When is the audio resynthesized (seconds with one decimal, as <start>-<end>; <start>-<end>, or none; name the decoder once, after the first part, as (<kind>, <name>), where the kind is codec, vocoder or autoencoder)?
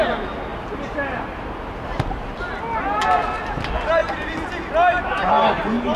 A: none